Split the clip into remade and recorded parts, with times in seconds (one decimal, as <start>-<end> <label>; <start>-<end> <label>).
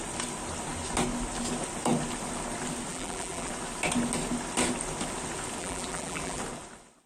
0.0-2.9 recorded; 2.9-3.5 remade; 3.5-5.6 recorded; 5.6-6.4 remade; 6.4-7.1 recorded